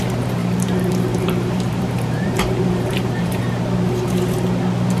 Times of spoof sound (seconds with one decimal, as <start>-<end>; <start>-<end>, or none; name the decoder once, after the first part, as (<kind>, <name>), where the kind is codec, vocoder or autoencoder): 0.4-3.4 (vocoder, BigVGAN v2)